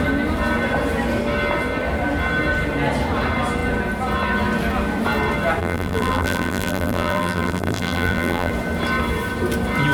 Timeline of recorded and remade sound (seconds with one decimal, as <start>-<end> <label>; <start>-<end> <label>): 0.0-5.6 recorded; 5.6-8.5 remade; 8.5-9.9 recorded